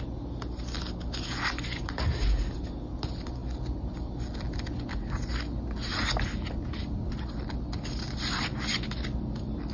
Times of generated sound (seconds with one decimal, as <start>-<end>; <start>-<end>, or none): none